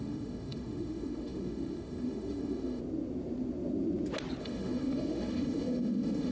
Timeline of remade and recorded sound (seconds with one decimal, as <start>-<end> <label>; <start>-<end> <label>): 0.0-2.8 remade; 2.8-4.4 recorded; 4.4-6.3 remade